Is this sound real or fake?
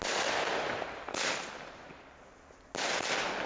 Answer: real